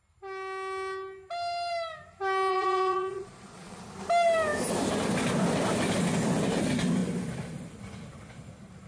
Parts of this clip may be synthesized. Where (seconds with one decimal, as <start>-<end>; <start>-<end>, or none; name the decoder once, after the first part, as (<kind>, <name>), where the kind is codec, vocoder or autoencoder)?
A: 2.5-3.8 (vocoder, Vocos)